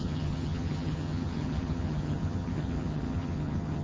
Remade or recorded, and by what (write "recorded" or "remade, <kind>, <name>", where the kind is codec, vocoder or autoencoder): remade, vocoder, HiFi-GAN